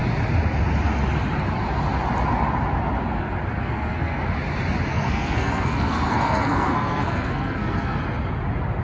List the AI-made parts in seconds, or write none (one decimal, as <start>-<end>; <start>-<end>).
3.6-4.2; 4.9-8.0